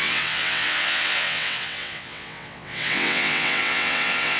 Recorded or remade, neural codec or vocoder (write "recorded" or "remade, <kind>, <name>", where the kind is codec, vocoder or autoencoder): remade, vocoder, WaveNeXt